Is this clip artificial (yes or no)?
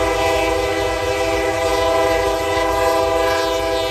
no